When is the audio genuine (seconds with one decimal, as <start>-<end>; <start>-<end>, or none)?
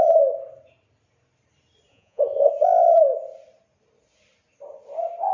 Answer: 0.0-1.9; 2.5-5.3